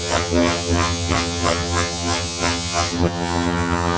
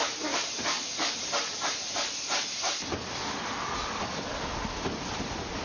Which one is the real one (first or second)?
second